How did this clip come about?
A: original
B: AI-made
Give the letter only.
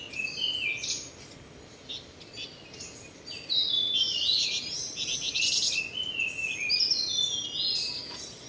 A